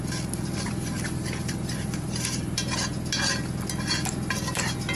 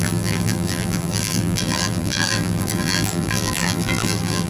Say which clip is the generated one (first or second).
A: second